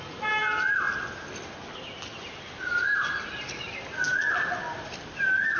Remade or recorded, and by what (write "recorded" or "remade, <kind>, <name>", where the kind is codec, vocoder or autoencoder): recorded